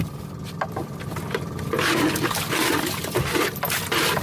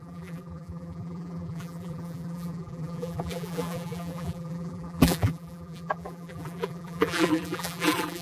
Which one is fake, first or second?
second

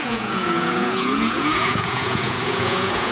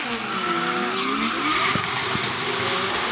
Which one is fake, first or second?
first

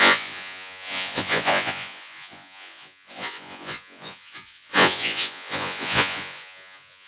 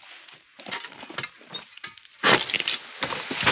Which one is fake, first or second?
first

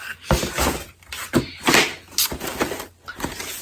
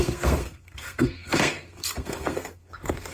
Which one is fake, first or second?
second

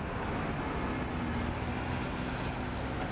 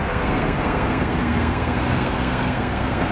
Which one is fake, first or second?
second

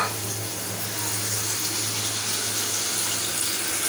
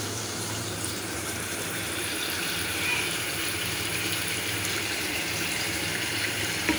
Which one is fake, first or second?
second